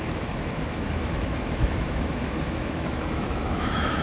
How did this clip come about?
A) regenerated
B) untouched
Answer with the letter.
A